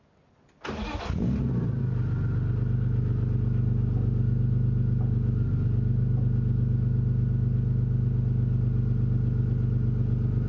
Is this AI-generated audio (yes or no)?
no